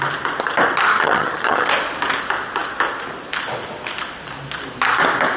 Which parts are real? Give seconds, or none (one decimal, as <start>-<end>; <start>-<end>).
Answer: 0.0-0.9; 1.7-5.4